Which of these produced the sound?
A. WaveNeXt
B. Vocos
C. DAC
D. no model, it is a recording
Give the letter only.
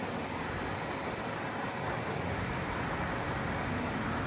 D